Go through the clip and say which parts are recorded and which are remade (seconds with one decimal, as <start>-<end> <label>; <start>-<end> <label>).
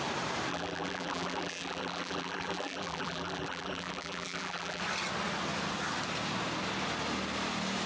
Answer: 0.0-0.5 recorded; 0.5-4.8 remade; 4.8-7.9 recorded